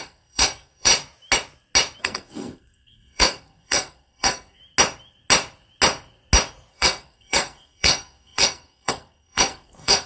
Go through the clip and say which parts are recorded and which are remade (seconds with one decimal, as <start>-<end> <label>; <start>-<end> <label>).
0.0-0.9 remade; 0.9-2.0 recorded; 2.0-4.6 remade; 4.6-6.7 recorded; 6.7-10.1 remade